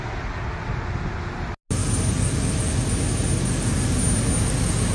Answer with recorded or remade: recorded